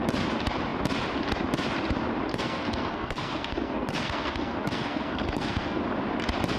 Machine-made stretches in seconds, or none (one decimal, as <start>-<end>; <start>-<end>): 2.3-5.8